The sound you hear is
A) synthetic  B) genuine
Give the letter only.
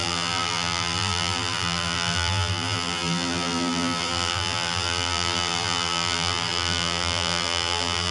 A